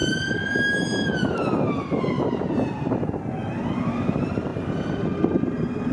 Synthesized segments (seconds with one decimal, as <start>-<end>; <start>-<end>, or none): none